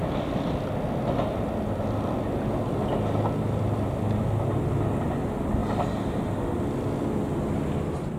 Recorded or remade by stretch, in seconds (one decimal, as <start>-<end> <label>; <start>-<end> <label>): 0.0-8.2 recorded